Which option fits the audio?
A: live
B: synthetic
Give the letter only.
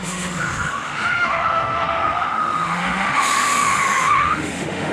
B